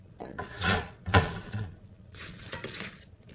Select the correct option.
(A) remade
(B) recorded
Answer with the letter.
A